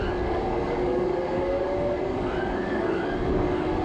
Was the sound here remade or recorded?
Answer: remade